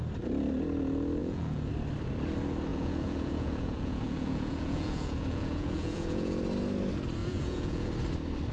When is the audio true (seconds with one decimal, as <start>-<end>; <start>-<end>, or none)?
0.0-1.2; 1.7-2.7; 6.4-7.2; 7.9-8.5